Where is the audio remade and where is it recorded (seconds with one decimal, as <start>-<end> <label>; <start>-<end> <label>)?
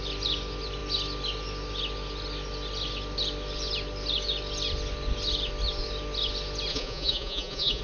0.0-6.7 recorded; 6.7-7.8 remade